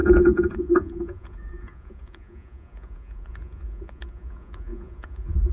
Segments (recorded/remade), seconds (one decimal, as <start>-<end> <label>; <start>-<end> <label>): 0.0-5.5 remade

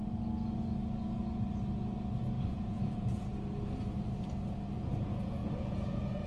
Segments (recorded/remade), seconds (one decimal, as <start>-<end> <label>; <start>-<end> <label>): 0.0-2.5 recorded; 2.5-3.3 remade; 3.3-5.0 recorded; 5.0-6.3 remade

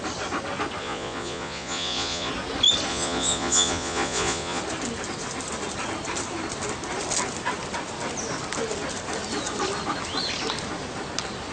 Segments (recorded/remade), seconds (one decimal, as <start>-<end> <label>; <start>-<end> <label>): 0.0-0.8 recorded; 0.8-2.3 remade; 2.3-2.9 recorded; 2.9-4.6 remade; 4.6-11.5 recorded